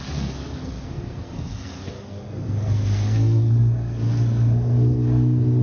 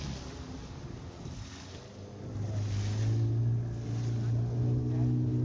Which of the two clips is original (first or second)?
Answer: second